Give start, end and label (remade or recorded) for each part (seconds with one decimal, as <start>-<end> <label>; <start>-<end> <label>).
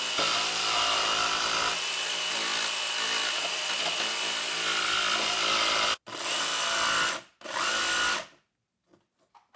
0.0-9.6 recorded